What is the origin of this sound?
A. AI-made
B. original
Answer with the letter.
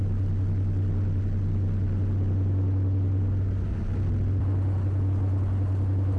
B